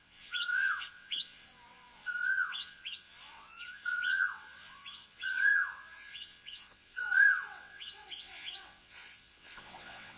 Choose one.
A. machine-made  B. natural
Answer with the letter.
A